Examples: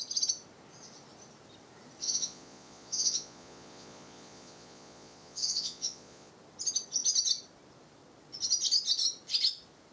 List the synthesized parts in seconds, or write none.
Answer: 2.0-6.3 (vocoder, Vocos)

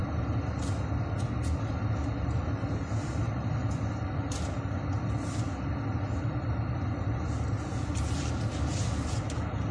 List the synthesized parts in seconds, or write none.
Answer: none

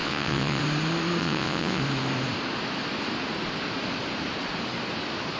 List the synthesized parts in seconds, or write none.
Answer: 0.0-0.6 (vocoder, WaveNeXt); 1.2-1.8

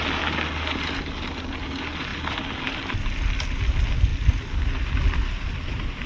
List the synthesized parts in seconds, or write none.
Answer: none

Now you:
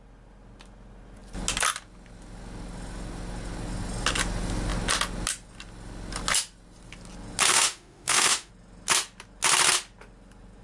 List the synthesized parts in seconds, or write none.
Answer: 7.5-8.5 (autoencoder, DAC-VAE)

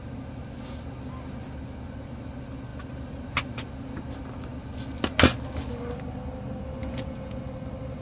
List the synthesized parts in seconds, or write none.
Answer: 6.8-7.4 (vocoder, Vocos)